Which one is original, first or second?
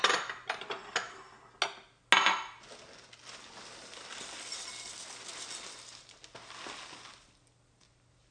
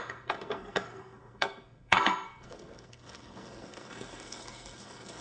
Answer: first